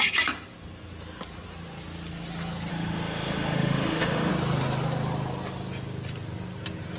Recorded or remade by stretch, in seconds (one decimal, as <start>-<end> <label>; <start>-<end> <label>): 0.0-2.7 recorded; 2.7-4.3 remade; 4.3-7.0 recorded